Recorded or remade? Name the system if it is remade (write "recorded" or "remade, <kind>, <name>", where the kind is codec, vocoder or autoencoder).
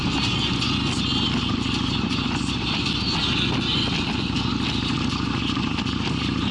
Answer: recorded